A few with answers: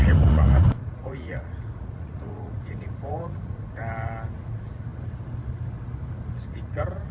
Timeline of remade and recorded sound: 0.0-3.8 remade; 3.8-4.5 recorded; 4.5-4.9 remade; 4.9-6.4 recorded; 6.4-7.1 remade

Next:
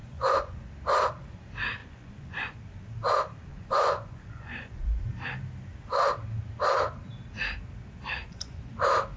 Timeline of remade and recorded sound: 0.0-0.7 remade; 0.7-1.8 recorded; 1.8-2.6 remade; 2.6-3.5 recorded; 3.5-5.1 remade; 5.1-8.2 recorded; 8.2-8.7 remade; 8.7-9.2 recorded